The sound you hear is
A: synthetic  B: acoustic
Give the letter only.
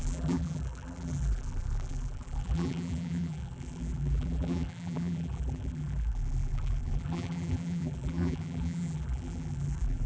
A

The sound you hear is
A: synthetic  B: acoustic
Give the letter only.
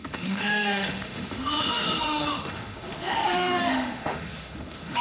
A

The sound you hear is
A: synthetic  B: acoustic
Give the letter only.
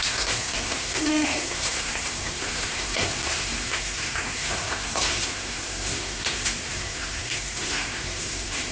A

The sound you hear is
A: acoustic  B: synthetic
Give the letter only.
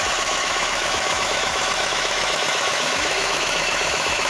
B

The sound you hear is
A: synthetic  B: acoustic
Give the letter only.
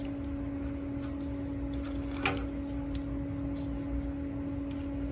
B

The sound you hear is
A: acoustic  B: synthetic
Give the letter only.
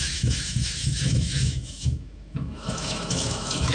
B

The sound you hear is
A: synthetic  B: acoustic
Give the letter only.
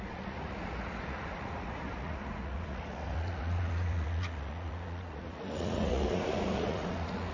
A